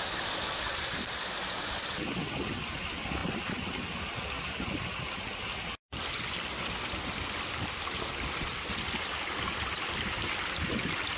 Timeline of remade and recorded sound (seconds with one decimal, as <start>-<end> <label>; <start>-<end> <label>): 0.0-11.2 recorded